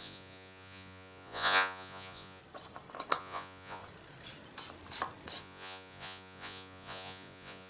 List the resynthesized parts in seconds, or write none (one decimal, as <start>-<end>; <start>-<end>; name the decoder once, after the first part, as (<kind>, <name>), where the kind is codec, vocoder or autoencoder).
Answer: 0.0-2.4 (vocoder, Vocos); 3.2-3.8; 5.4-7.7